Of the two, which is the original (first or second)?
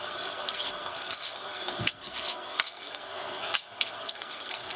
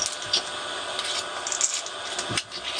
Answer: second